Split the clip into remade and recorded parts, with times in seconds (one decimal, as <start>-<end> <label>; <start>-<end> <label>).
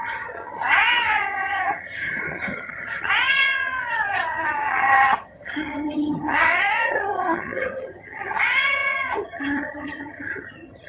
0.0-10.9 remade